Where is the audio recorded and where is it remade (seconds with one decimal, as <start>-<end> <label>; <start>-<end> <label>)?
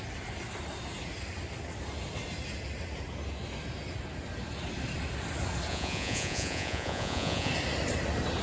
0.0-5.7 recorded; 5.7-7.5 remade; 7.5-8.4 recorded